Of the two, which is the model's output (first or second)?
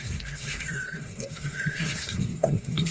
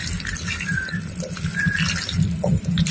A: first